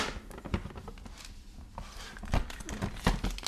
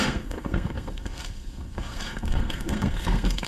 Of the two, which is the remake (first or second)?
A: second